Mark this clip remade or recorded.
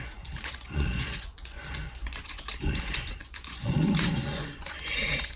remade